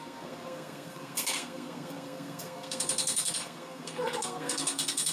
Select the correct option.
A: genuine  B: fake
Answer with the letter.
B